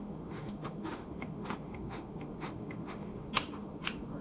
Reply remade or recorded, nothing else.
remade